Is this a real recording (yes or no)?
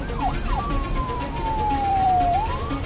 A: no